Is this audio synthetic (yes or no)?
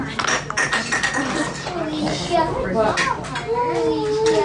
no